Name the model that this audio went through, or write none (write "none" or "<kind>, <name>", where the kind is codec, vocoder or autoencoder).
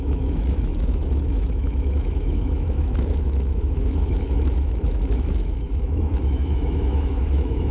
autoencoder, DAC-VAE